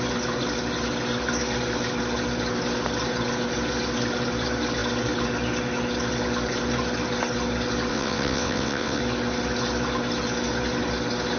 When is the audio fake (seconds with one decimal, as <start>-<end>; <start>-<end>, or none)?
7.9-9.0